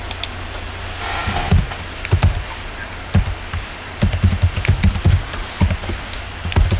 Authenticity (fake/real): real